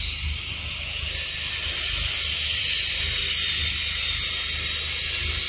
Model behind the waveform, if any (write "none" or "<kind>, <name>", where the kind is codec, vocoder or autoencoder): none